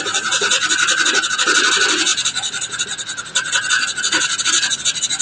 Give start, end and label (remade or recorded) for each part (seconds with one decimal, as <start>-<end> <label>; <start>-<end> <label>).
0.0-5.2 recorded

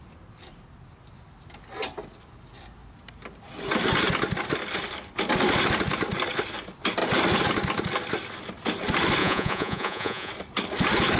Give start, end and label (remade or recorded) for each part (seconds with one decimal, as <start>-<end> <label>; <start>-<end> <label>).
0.0-9.2 recorded; 9.2-10.3 remade; 10.3-11.2 recorded

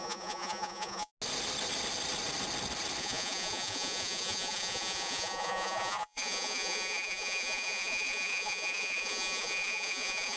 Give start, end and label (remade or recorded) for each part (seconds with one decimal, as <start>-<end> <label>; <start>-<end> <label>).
0.0-1.1 remade; 1.1-3.0 recorded; 3.0-10.4 remade

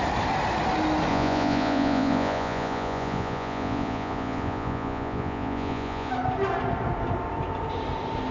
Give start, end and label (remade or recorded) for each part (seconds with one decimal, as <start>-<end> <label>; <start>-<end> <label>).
0.0-1.1 recorded; 1.1-6.1 remade; 6.1-8.3 recorded